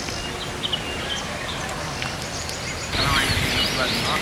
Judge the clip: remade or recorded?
recorded